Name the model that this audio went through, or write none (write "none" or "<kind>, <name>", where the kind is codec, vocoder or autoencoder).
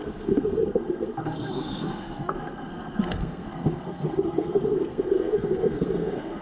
codec, SNAC